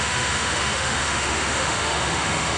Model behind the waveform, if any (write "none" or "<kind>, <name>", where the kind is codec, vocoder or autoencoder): autoencoder, DAC-VAE